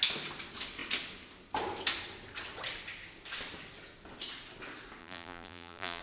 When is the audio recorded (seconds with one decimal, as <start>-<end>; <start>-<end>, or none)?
0.0-5.0